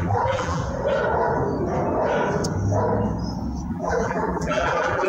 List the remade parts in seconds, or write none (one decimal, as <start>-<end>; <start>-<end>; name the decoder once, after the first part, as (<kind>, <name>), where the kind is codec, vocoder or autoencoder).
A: 0.0-0.6 (vocoder, BigVGAN v2); 3.7-5.1